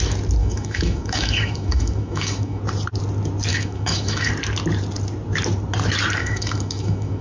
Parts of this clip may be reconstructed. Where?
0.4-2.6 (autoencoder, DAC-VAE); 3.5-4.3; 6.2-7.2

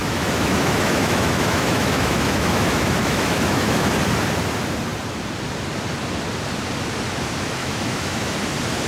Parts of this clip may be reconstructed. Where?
0.0-3.9 (autoencoder, DAC-VAE); 7.6-8.4

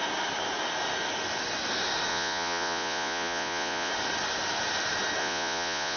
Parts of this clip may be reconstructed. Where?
2.1-3.9 (vocoder, Vocos); 5.2-6.0

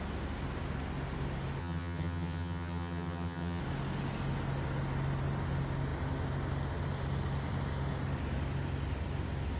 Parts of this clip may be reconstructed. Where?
1.6-3.6 (vocoder, HiFi-GAN)

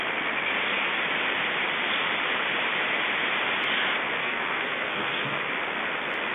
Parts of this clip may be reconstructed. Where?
4.2-5.4 (codec, SNAC)